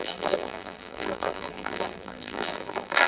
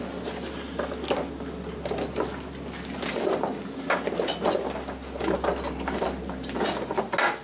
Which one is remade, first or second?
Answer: first